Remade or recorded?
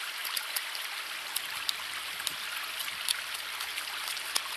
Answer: recorded